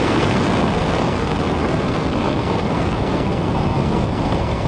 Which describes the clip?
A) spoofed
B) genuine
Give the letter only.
A